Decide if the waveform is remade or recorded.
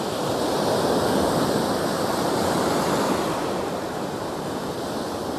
recorded